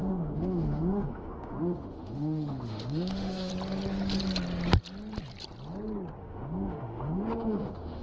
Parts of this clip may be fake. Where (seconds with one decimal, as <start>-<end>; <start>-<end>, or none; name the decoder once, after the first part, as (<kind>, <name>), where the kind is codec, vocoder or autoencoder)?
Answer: 0.0-3.5 (autoencoder, DAC-VAE); 6.2-8.0